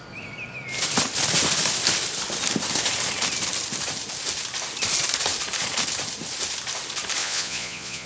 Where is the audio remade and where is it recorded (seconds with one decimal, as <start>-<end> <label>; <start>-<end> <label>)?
0.0-7.2 recorded; 7.2-8.1 remade